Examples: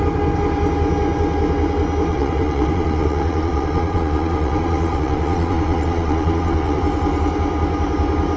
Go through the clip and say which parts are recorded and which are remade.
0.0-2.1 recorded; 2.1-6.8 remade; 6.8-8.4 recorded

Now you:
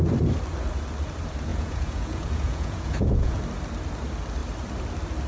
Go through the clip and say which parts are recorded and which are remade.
0.0-1.5 recorded; 1.5-3.4 remade; 3.4-5.3 recorded

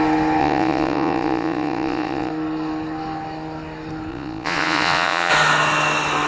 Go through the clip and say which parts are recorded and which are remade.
0.0-0.4 recorded; 0.4-2.3 remade; 2.3-4.1 recorded; 4.1-5.3 remade; 5.3-6.3 recorded

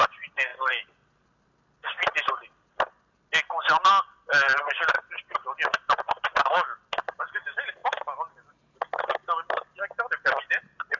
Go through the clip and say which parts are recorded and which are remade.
0.0-11.0 recorded